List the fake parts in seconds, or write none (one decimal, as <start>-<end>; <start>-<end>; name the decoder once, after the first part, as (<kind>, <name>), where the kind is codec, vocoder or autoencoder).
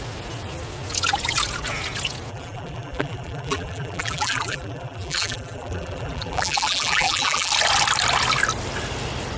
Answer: 2.3-7.5 (vocoder, BigVGAN v2)